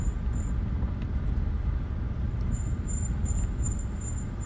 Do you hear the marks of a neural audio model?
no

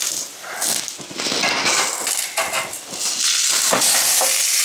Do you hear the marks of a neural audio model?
no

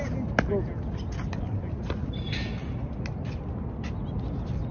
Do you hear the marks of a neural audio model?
no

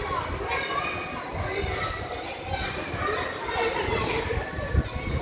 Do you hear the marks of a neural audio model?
no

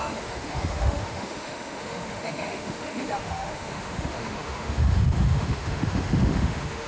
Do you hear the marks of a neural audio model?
yes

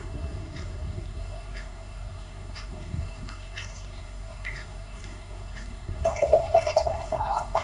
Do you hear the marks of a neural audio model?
yes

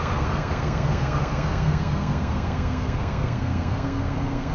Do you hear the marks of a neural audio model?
yes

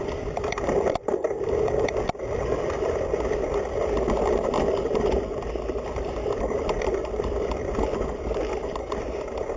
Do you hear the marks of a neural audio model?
no